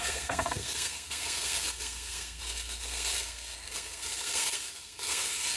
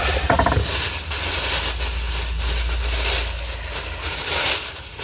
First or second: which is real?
second